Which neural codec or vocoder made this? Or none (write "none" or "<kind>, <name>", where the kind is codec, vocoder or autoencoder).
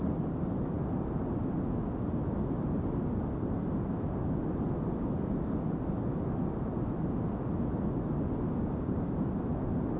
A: none